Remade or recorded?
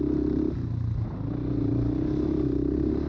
recorded